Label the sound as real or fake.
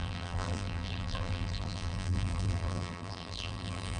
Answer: fake